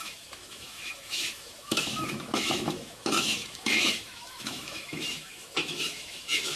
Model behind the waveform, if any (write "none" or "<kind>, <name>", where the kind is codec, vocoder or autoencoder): autoencoder, DAC-VAE